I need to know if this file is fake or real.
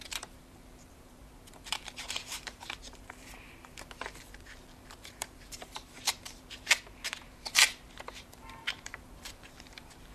fake